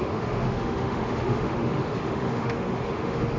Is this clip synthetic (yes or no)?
yes